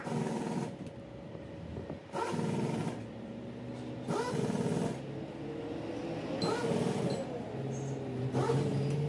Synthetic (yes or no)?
no